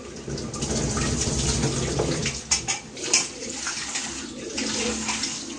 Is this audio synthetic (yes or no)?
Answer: no